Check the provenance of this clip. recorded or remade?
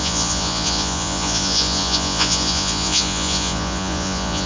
remade